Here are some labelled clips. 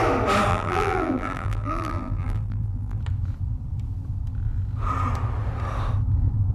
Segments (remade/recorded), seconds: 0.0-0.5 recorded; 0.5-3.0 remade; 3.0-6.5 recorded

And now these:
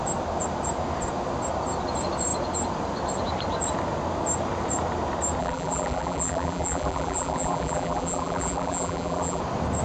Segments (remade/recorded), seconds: 0.0-5.4 recorded; 5.4-9.4 remade; 9.4-9.8 recorded

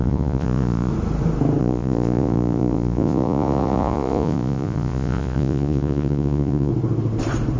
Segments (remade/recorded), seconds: 0.0-0.9 remade; 0.9-1.6 recorded; 1.6-6.7 remade; 6.7-7.6 recorded

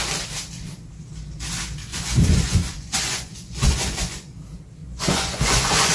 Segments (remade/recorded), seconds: 0.0-1.9 recorded; 1.9-4.3 remade; 4.3-4.8 recorded; 4.8-5.9 remade